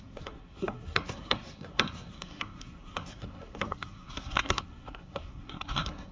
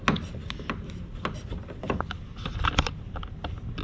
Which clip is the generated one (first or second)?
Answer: first